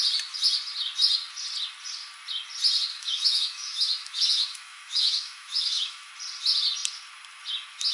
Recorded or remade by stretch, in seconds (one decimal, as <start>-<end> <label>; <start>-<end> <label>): 0.0-2.9 recorded; 2.9-6.1 remade; 6.1-7.9 recorded